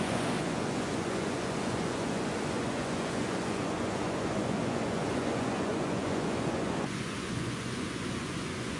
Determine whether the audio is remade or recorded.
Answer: remade